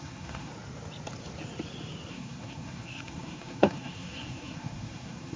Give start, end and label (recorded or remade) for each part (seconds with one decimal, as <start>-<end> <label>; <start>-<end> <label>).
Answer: 0.0-0.5 remade; 0.5-2.1 recorded; 2.1-5.4 remade